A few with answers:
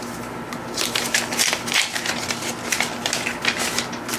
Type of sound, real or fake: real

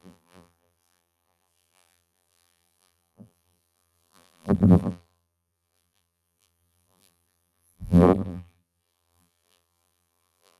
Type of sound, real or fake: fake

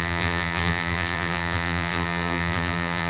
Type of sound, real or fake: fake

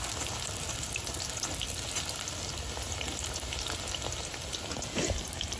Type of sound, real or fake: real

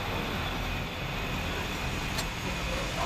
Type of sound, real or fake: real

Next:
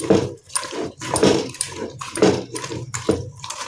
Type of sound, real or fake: fake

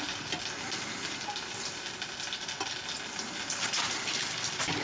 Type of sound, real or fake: fake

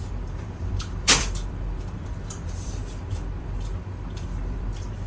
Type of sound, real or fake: fake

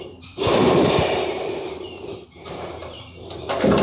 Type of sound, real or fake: fake